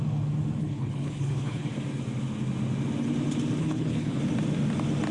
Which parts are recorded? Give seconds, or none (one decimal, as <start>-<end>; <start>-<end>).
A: 0.0-0.6; 1.7-3.6; 4.2-5.1